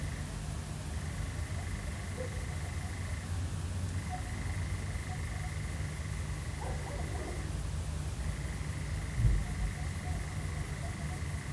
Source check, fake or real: real